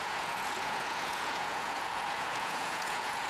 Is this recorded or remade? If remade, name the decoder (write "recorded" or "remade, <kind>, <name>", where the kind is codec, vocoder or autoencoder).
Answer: remade, vocoder, Vocos